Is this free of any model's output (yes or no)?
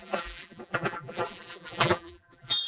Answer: no